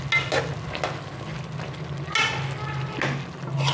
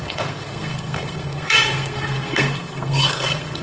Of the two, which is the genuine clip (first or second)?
first